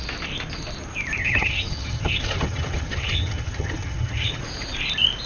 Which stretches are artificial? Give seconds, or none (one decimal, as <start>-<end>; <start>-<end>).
1.2-4.4